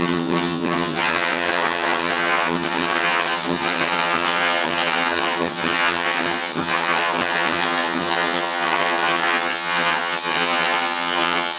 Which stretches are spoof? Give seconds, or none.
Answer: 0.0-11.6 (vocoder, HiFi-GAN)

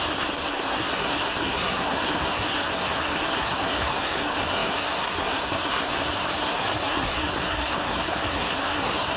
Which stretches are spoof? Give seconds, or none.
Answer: 0.0-9.2 (codec, SNAC)

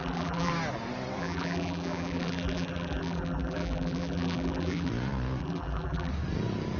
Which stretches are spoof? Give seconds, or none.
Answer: 0.0-0.5 (vocoder, BigVGAN v2); 1.2-4.9; 5.4-6.1

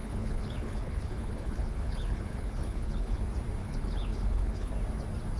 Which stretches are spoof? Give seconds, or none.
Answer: 0.0-3.2 (codec, HILCodec); 3.6-4.7

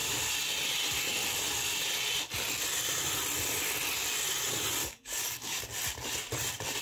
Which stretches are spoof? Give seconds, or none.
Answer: 4.8-5.6 (codec, DAC)

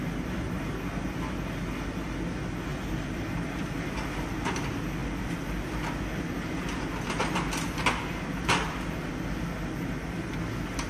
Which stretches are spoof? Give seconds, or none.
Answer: 2.7-3.9 (vocoder, BigVGAN v2); 5.0-9.1

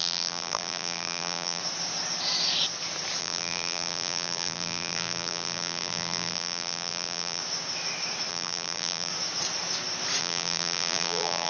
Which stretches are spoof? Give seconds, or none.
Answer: 0.0-1.6 (vocoder, BigVGAN v2); 3.2-7.4; 8.3-9.1; 10.2-11.5

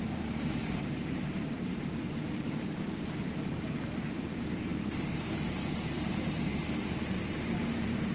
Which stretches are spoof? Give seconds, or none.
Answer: 0.0-1.7 (vocoder, BigVGAN v2); 2.4-6.5; 7.3-8.1